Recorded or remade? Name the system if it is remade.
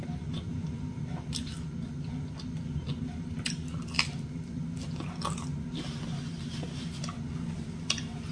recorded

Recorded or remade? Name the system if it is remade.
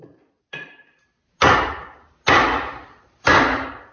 recorded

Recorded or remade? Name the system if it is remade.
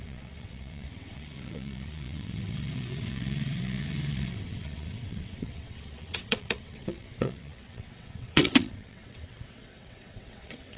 remade, vocoder, WaveNeXt